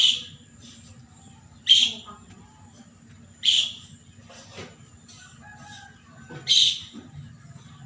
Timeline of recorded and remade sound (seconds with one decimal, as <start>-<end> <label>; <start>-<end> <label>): 0.0-7.9 recorded